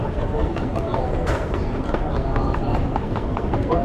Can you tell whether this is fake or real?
fake